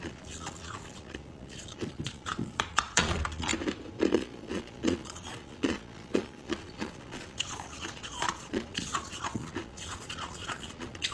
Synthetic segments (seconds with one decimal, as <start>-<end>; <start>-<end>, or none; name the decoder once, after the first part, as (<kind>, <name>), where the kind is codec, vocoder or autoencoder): 0.0-3.5 (vocoder, Vocos); 4.1-11.1